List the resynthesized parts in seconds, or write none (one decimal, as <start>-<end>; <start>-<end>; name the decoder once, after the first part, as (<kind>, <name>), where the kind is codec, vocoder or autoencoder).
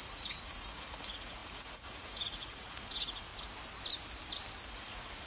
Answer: 0.0-3.3 (vocoder, Vocos); 4.7-5.3